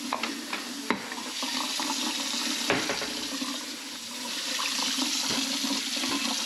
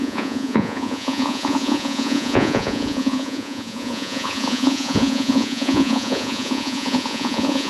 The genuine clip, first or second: first